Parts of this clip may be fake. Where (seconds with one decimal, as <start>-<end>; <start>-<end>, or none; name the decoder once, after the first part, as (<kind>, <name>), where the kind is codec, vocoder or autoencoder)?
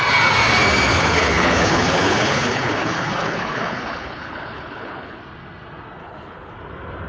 0.9-5.2 (codec, HILCodec); 6.0-6.5